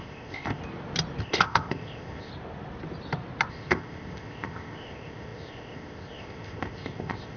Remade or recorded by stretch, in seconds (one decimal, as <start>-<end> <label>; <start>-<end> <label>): 0.0-0.6 remade; 0.6-1.2 recorded; 1.2-2.3 remade; 2.3-3.5 recorded; 3.5-7.4 remade